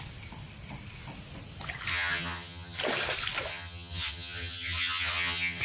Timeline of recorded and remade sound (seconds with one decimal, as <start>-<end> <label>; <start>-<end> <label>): 0.0-1.9 recorded; 1.9-2.8 remade; 2.8-3.5 recorded; 3.5-5.6 remade